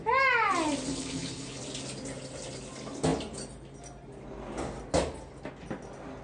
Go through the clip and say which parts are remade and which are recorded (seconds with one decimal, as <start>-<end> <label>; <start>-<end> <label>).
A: 0.0-0.9 recorded; 0.9-1.6 remade; 1.6-6.2 recorded